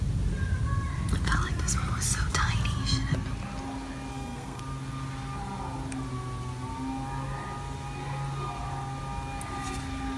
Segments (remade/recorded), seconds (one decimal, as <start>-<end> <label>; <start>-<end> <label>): 0.0-4.1 recorded; 4.1-4.6 remade; 4.6-10.2 recorded